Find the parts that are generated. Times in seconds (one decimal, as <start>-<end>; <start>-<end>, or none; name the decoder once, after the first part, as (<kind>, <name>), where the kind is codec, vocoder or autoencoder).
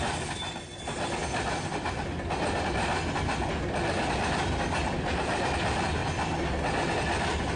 none